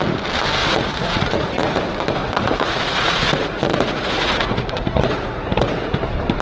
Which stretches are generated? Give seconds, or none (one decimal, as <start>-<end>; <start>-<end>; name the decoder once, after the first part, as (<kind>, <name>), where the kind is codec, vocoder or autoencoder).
0.6-1.8 (vocoder, Vocos); 2.2-6.0